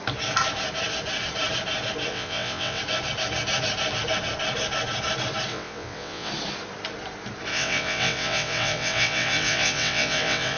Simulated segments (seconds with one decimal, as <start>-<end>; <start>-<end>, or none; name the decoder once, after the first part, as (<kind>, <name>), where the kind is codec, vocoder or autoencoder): 2.1-2.8 (vocoder, WaveNeXt); 5.5-6.3; 7.5-10.6